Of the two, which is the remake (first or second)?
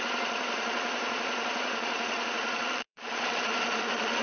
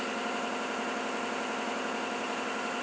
first